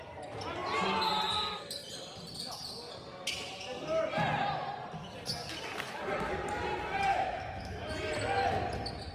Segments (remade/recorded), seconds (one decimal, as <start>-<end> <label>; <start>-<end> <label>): 0.0-7.1 recorded; 7.1-8.1 remade; 8.1-9.1 recorded